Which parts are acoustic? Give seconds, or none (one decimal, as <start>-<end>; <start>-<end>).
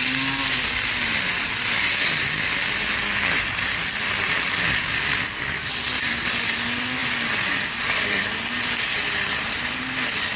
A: 0.0-10.4